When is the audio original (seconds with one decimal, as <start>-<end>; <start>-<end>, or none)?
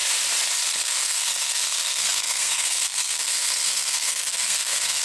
0.0-0.8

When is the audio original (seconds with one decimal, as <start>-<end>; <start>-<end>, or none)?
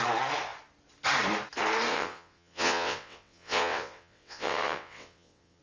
0.0-1.9